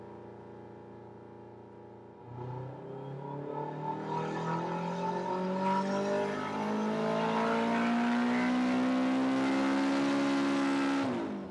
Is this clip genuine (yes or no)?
yes